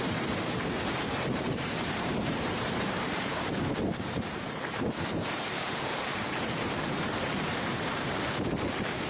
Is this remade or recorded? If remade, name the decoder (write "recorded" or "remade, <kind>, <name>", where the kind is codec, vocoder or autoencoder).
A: remade, vocoder, BigVGAN v2